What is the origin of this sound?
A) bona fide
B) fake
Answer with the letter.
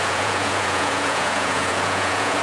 B